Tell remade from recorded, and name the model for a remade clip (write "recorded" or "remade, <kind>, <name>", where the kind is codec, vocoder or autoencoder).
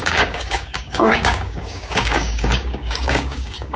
remade, codec, DAC